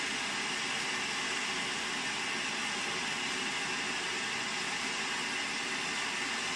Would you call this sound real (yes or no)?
yes